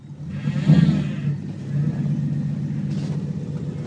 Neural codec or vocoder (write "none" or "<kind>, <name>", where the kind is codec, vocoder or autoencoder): none